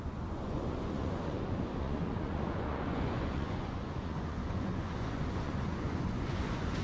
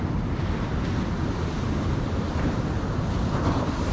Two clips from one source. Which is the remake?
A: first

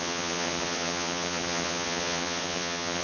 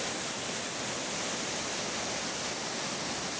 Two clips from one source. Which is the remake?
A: first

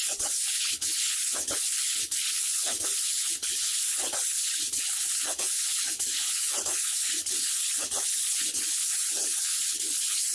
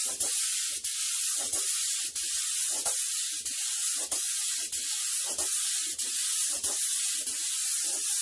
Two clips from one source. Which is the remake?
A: first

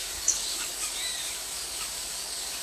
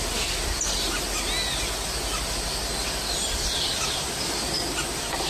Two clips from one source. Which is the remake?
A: first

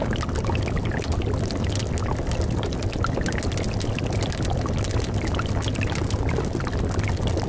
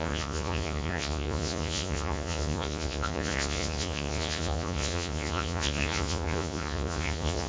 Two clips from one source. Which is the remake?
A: second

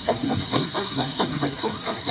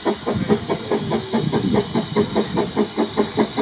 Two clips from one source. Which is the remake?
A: first